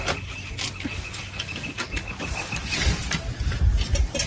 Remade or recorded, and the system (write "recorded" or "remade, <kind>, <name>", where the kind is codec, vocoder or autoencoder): recorded